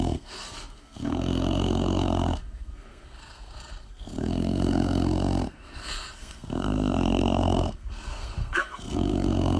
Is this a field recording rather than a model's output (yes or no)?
no